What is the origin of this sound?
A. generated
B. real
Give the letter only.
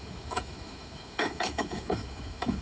A